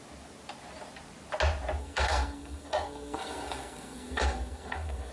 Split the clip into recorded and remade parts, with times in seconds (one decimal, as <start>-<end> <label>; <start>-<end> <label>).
0.0-1.8 recorded; 1.8-5.1 remade

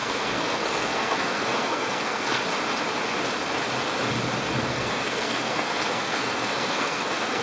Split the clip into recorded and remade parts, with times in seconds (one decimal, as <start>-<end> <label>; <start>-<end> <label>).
0.0-2.4 remade; 2.4-4.7 recorded; 4.7-7.4 remade

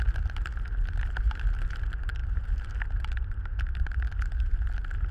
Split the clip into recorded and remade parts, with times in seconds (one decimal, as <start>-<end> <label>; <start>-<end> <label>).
0.0-5.1 recorded

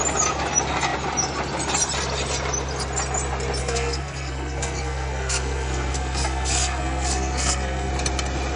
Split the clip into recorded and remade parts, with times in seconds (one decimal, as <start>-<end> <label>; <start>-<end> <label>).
0.0-3.6 recorded; 3.6-7.9 remade; 7.9-8.6 recorded

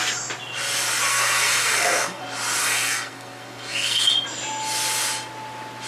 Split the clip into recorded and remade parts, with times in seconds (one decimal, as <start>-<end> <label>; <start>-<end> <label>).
0.0-1.1 recorded; 1.1-2.2 remade; 2.2-2.6 recorded; 2.6-4.1 remade; 4.1-5.9 recorded

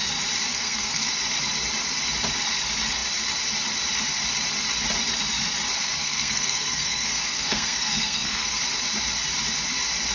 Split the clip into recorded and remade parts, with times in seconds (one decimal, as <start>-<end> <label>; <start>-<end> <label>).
0.0-0.5 recorded; 0.5-1.1 remade; 1.1-6.0 recorded; 6.0-8.6 remade; 8.6-10.1 recorded